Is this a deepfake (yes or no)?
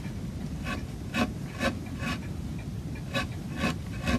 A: no